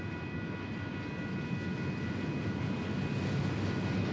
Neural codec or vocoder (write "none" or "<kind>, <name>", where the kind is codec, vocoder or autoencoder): none